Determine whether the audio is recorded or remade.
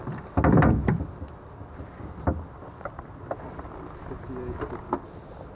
recorded